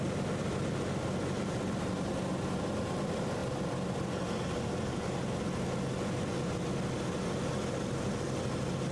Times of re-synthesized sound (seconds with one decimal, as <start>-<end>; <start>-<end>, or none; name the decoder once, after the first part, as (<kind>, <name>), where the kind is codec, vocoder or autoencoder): none